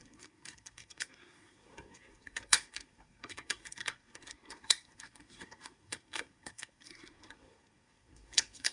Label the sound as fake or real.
fake